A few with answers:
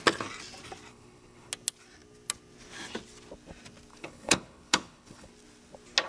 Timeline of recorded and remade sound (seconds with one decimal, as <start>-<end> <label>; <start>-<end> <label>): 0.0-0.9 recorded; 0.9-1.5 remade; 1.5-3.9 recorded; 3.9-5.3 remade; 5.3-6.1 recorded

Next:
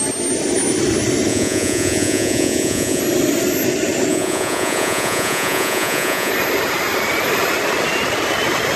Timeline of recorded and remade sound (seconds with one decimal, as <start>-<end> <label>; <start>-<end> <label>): 0.0-1.3 recorded; 1.3-3.0 remade; 3.0-4.1 recorded; 4.1-6.3 remade; 6.3-8.8 recorded

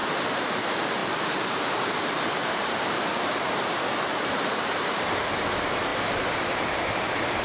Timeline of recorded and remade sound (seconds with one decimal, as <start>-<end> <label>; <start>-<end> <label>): 0.0-5.9 remade; 5.9-6.5 recorded; 6.5-7.4 remade